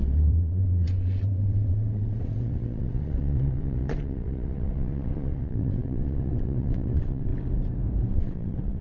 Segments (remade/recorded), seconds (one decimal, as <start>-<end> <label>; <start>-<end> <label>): 0.0-7.3 remade; 7.3-8.1 recorded; 8.1-8.8 remade

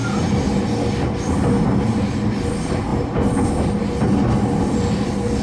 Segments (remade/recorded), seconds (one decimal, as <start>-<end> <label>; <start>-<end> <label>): 0.0-2.9 recorded; 2.9-3.4 remade; 3.4-5.4 recorded

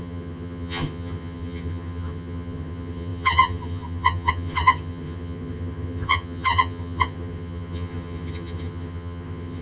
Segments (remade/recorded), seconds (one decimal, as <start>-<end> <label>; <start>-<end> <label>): 0.0-9.6 remade